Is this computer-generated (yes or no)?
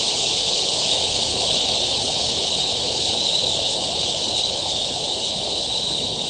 yes